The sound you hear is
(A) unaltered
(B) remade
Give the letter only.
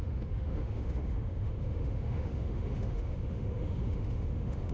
B